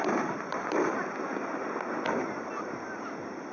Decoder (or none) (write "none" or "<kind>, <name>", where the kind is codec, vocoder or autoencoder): none